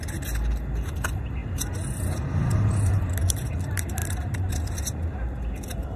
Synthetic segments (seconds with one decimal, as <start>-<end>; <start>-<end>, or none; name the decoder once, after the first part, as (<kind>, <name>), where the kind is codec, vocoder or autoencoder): none